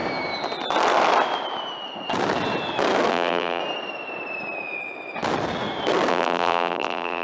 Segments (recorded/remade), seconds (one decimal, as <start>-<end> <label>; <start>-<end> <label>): 0.0-3.1 recorded; 3.1-3.6 remade; 3.6-6.1 recorded; 6.1-7.2 remade